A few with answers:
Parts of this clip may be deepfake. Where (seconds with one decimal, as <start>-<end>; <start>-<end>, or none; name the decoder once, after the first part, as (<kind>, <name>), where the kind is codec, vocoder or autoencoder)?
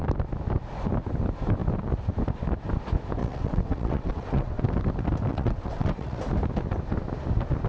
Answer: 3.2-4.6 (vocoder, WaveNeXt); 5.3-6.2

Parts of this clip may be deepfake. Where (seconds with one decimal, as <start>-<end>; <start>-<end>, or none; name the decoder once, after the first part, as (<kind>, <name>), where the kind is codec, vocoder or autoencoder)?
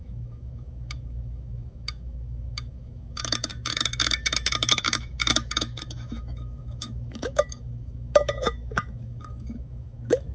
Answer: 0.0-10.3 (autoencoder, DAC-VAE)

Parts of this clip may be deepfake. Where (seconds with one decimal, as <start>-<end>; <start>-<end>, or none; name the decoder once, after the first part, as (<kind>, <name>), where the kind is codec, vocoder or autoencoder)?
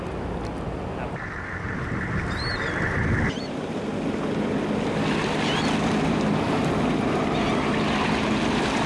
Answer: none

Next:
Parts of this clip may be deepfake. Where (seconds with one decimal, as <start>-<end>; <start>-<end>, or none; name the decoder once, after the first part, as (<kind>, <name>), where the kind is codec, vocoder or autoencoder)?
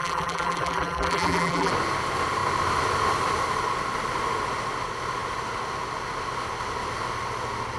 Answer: 0.0-1.7 (vocoder, BigVGAN v2)